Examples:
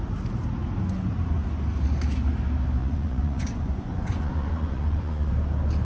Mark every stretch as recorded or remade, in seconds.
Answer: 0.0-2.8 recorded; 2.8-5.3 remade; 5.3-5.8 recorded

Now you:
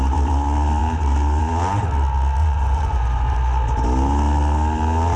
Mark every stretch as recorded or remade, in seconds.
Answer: 0.0-2.4 recorded; 2.4-3.4 remade; 3.4-5.2 recorded

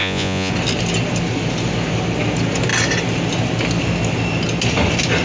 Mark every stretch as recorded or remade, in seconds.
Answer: 0.0-0.5 remade; 0.5-5.2 recorded